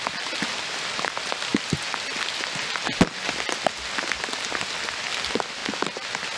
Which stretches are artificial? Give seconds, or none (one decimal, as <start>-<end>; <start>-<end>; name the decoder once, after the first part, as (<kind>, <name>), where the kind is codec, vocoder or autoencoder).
none